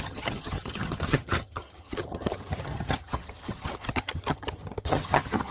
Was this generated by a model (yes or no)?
yes